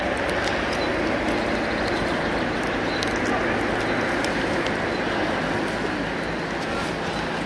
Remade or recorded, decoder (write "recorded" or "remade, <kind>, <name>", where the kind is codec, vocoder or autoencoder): recorded